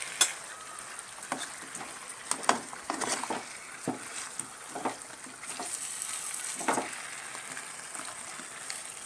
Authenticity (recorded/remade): recorded